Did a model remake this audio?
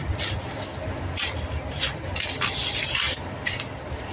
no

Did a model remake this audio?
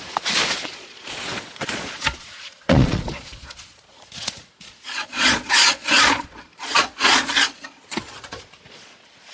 yes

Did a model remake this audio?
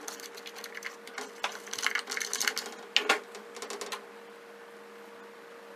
no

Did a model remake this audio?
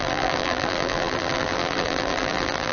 yes